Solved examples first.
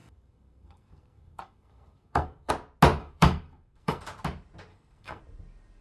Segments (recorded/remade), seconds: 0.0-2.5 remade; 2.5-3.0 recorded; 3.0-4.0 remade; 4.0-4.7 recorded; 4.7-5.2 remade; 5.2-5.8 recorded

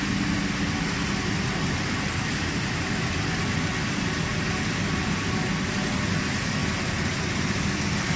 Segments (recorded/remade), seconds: 0.0-8.2 recorded

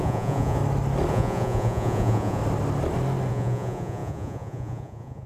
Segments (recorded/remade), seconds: 0.0-0.6 remade; 0.6-1.1 recorded; 1.1-2.4 remade; 2.4-3.3 recorded; 3.3-5.3 remade

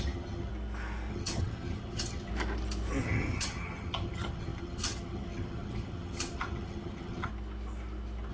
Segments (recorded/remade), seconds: 0.0-0.5 remade; 0.5-1.1 recorded; 1.1-2.3 remade; 2.3-3.0 recorded; 3.0-7.3 remade; 7.3-8.3 recorded

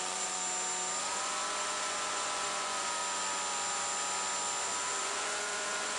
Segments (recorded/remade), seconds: 0.0-0.4 remade; 0.4-1.0 recorded; 1.0-3.0 remade; 3.0-5.0 recorded; 5.0-6.0 remade